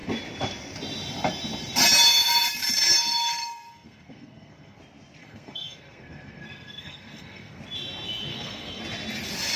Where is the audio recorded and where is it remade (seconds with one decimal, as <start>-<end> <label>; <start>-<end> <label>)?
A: 0.0-3.4 recorded; 3.4-4.8 remade; 4.8-5.2 recorded; 5.2-7.6 remade; 7.6-8.3 recorded; 8.3-8.8 remade; 8.8-9.6 recorded